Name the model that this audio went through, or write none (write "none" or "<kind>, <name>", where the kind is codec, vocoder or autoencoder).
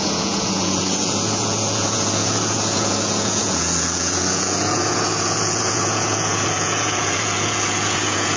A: vocoder, Vocos